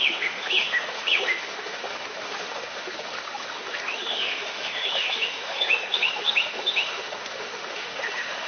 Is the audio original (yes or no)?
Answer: no